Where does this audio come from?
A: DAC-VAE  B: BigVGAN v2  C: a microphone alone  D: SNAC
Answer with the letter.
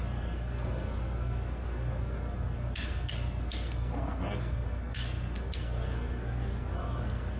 D